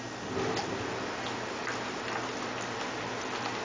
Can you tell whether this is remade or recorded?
recorded